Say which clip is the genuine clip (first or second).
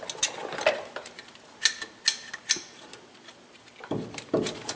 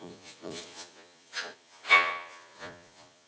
first